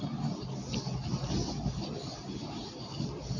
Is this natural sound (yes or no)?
no